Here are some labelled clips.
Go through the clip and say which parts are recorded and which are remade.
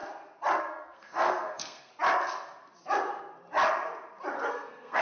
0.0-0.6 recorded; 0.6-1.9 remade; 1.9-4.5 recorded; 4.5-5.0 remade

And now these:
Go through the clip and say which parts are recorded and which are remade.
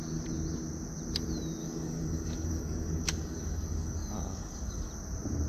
0.0-1.6 recorded; 1.6-4.9 remade; 4.9-5.5 recorded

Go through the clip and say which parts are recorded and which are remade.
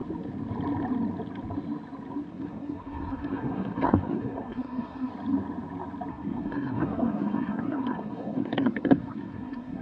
0.0-2.3 recorded; 2.3-5.1 remade; 5.1-6.1 recorded; 6.1-9.8 remade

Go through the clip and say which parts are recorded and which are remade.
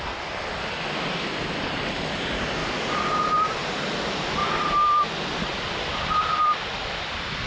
0.0-2.6 recorded; 2.6-3.1 remade; 3.1-7.5 recorded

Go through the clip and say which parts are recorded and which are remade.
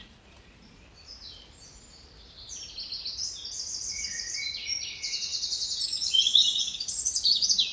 0.0-0.8 remade; 0.8-3.9 recorded; 3.9-7.7 remade